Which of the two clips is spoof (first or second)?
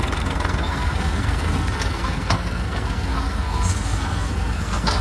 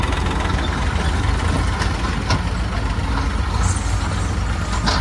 first